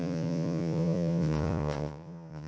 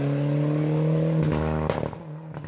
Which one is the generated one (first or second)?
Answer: first